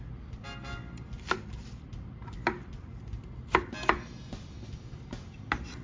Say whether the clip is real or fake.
real